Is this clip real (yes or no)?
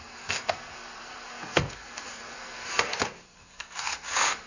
no